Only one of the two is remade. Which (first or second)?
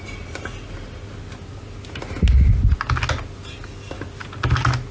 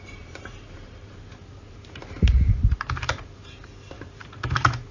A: second